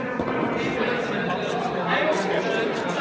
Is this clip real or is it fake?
real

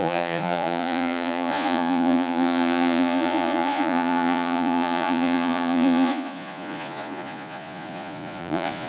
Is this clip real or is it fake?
fake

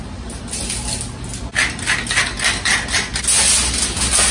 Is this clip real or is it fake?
real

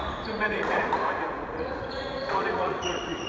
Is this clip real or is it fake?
fake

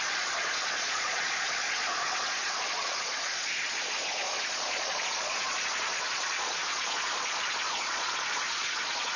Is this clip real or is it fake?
fake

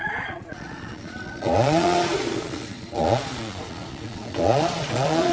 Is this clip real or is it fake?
fake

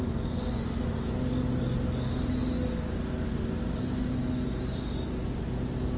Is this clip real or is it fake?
real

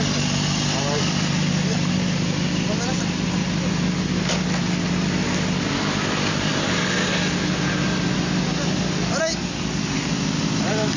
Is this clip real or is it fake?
real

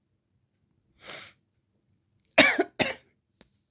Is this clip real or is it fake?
real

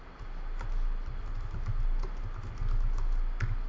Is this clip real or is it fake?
real